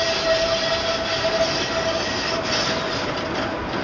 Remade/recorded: recorded